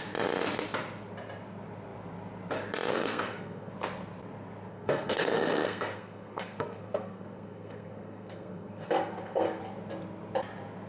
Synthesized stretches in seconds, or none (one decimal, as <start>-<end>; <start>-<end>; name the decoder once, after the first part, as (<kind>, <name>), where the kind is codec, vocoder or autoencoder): 2.9-3.7 (codec, SNAC); 4.7-9.6